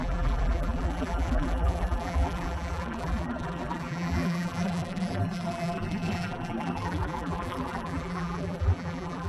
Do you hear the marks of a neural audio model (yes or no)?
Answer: yes